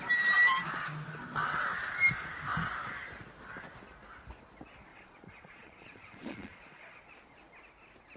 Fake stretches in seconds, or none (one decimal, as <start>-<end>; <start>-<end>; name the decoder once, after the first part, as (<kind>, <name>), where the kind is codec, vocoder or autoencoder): 4.9-7.4 (vocoder, Vocos)